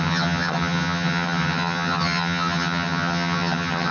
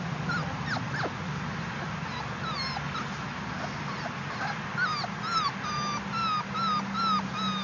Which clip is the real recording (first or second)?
second